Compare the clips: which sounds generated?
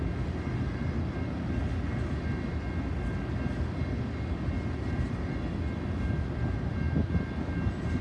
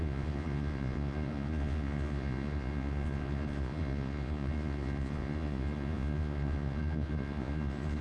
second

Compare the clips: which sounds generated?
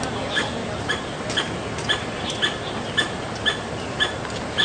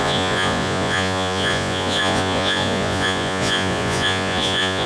second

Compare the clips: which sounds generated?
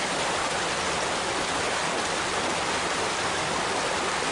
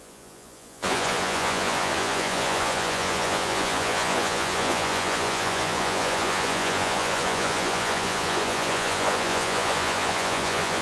second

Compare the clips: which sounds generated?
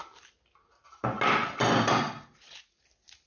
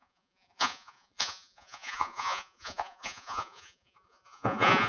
second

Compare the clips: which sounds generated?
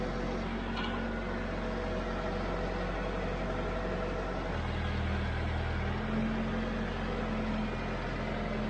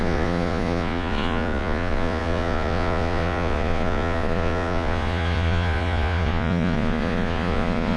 second